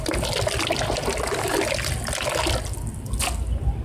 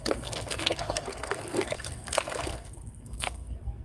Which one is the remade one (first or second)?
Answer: second